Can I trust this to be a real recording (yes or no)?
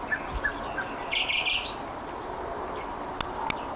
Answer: yes